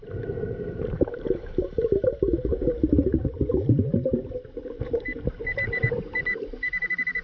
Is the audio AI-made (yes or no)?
yes